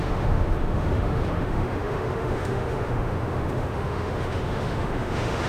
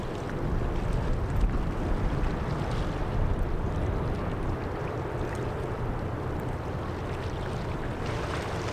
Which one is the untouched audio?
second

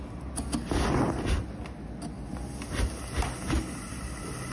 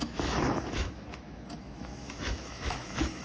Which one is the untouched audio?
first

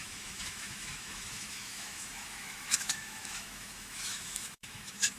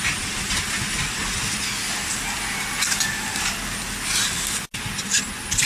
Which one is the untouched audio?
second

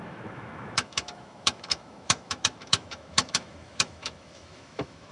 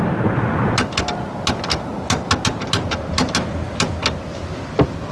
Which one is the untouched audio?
second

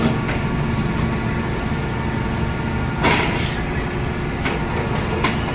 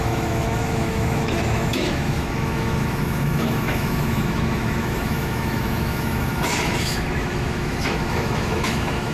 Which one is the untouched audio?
first